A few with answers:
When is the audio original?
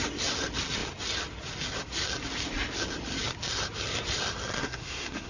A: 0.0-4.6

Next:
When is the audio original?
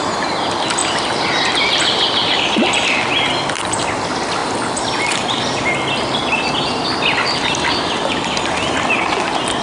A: 0.0-9.6